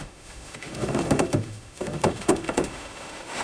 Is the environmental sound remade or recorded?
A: remade